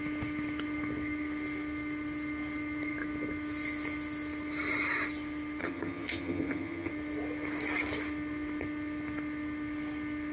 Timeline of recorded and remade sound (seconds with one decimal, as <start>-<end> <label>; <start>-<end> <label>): 0.0-5.6 recorded; 5.6-6.9 remade; 6.9-10.3 recorded